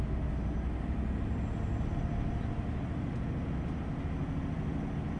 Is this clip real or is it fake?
real